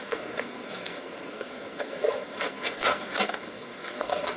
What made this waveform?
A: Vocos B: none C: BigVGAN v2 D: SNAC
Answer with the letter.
D